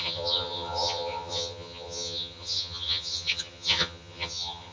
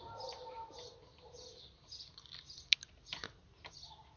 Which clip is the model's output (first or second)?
first